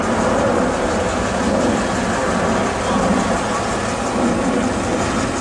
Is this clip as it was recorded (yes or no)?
yes